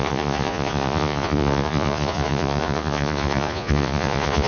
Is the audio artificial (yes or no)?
yes